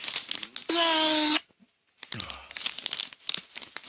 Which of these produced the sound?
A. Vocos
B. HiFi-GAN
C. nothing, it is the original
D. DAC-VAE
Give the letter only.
C